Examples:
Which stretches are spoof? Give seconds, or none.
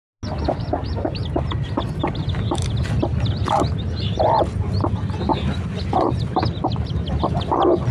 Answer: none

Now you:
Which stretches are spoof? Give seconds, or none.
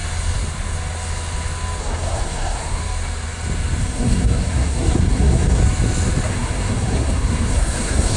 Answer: 1.8-2.8 (codec, SNAC); 3.8-5.6; 6.3-8.2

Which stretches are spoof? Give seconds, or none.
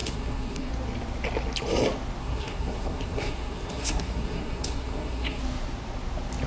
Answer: 0.0-0.7 (codec, SNAC); 2.2-5.4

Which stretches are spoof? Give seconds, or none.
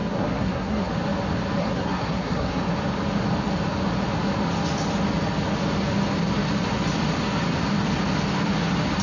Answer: 0.0-0.9 (codec, SNAC); 1.6-2.6